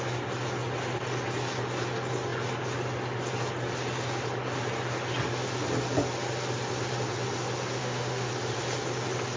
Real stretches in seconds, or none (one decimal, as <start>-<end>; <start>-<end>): 0.0-7.8; 8.3-9.4